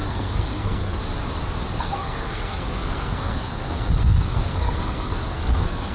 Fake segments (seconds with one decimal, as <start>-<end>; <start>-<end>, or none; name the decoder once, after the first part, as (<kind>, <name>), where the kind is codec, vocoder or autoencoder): 0.0-1.0 (codec, SNAC); 1.8-5.9